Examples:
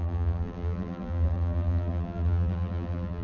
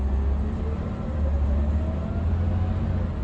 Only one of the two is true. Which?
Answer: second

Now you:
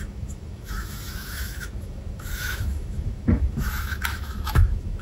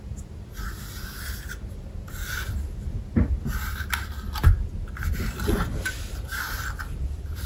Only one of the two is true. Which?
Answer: second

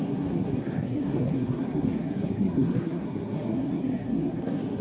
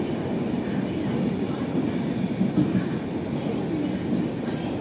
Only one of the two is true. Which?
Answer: second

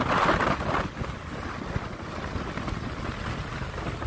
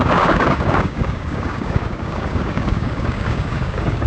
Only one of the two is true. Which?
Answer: first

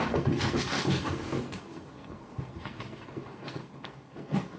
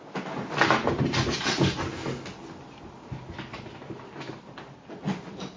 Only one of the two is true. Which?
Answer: second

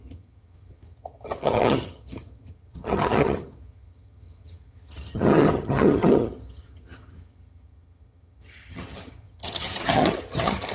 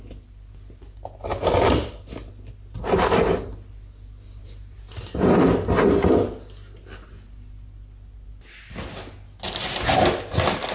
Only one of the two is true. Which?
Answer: second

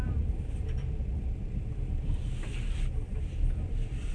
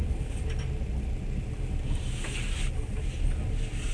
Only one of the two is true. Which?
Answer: second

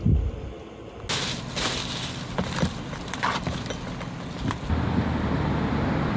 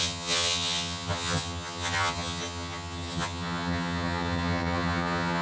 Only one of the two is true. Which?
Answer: first